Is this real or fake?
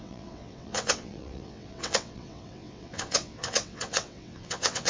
fake